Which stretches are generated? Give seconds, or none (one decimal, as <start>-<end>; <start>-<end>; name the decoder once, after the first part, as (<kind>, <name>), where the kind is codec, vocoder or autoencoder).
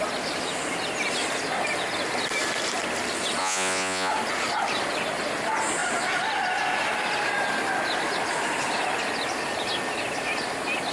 3.4-4.1 (vocoder, Vocos)